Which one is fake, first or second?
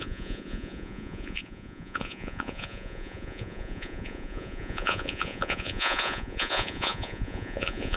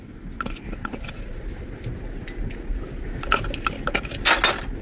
first